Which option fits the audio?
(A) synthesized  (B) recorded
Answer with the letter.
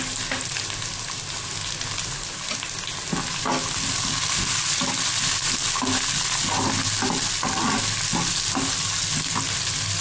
B